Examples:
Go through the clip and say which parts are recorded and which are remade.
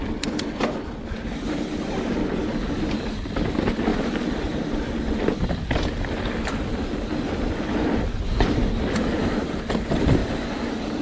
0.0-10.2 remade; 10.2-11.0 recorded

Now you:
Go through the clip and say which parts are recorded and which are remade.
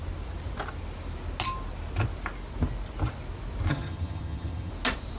0.0-3.7 recorded; 3.7-4.7 remade; 4.7-5.2 recorded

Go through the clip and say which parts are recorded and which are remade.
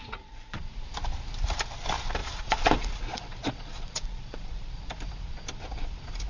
0.0-0.6 remade; 0.6-2.2 recorded; 2.2-4.9 remade; 4.9-6.3 recorded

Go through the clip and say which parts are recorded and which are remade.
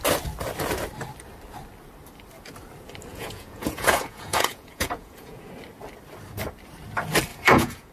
0.0-3.1 recorded; 3.1-5.5 remade; 5.5-7.3 recorded; 7.3-7.9 remade